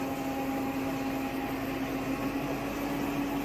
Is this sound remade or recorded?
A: recorded